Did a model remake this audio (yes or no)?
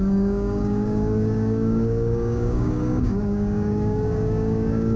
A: yes